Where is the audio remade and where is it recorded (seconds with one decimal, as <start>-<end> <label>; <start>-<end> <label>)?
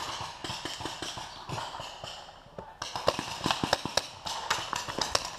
0.0-5.4 recorded